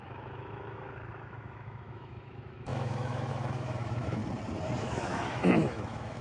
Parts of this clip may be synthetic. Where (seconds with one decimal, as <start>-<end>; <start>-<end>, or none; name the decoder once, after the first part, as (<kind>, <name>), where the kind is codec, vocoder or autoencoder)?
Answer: 0.0-4.2 (autoencoder, DAC-VAE); 4.8-6.2